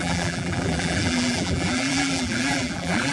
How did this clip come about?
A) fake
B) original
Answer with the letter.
A